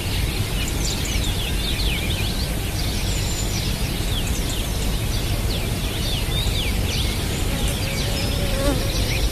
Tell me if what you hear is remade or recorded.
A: recorded